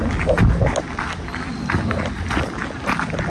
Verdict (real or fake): real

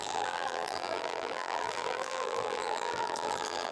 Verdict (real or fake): fake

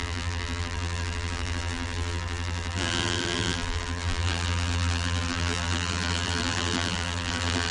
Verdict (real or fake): fake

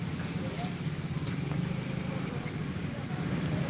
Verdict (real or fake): real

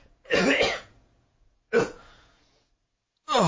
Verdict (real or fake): fake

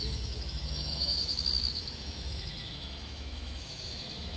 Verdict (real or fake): fake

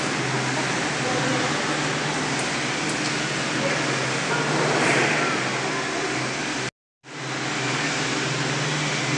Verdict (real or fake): real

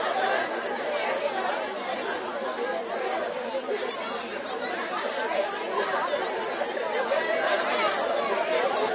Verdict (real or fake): real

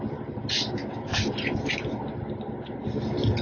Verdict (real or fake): real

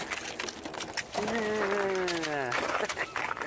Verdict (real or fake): real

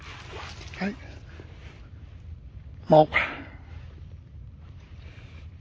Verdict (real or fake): real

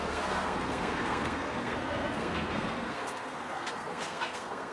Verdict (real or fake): fake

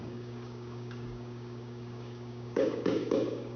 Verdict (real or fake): fake